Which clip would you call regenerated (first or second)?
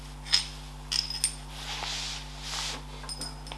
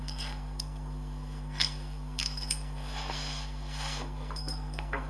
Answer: second